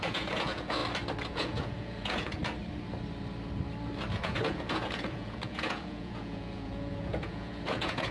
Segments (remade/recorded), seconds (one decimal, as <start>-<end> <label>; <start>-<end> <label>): 0.0-0.8 remade; 0.8-1.3 recorded; 1.3-2.4 remade; 2.4-4.2 recorded; 4.2-8.1 remade